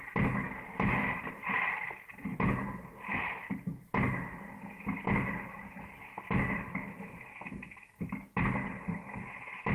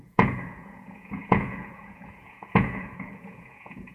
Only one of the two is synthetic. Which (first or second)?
second